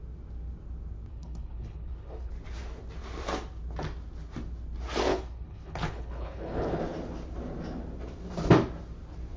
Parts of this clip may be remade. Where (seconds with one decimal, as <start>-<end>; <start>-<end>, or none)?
1.1-2.3; 5.1-6.8